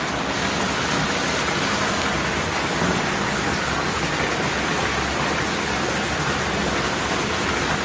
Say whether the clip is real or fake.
real